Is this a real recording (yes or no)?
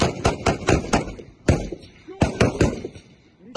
no